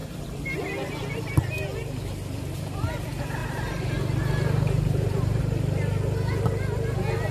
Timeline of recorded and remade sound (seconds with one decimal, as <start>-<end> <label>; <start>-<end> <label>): 0.0-0.6 remade; 0.6-1.8 recorded; 1.8-2.9 remade; 2.9-3.4 recorded; 3.4-5.4 remade; 5.4-7.3 recorded